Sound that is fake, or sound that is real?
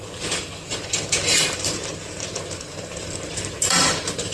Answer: fake